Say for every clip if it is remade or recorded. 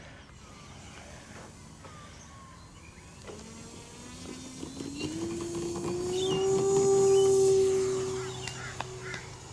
recorded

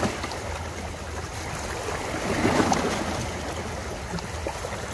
recorded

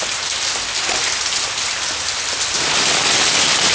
recorded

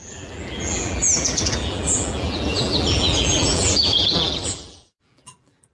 remade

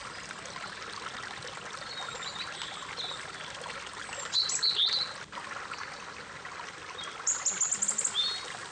recorded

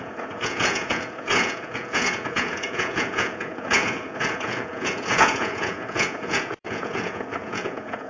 remade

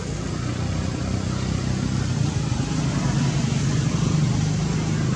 recorded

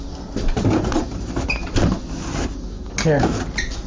recorded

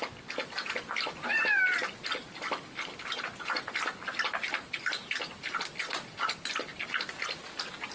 recorded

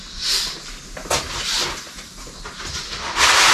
remade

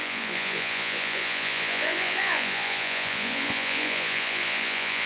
remade